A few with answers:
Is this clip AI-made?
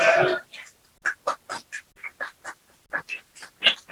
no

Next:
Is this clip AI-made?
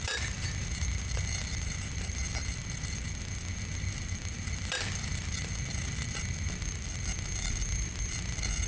yes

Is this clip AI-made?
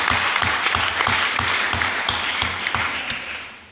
yes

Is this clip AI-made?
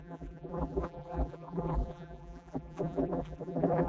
yes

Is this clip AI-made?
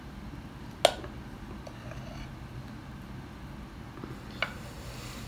no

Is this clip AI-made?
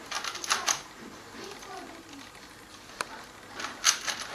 no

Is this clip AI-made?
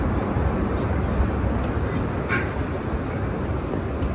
no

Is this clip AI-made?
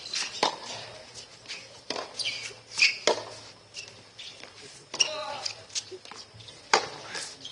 no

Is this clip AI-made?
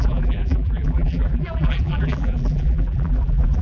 yes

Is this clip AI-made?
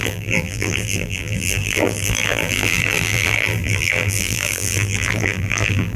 yes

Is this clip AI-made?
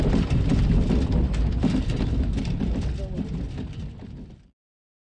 no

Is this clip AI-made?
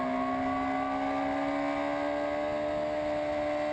no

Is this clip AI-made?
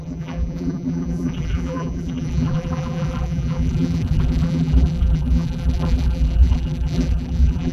yes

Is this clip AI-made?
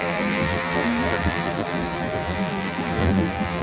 yes